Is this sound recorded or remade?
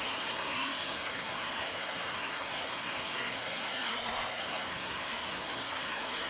remade